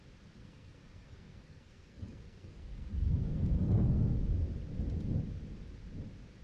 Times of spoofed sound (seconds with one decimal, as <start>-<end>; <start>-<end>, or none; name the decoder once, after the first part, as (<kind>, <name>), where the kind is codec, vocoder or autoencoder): 0.4-4.2 (codec, SNAC)